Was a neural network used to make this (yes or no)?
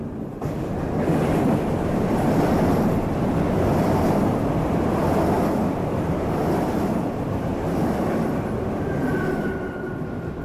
no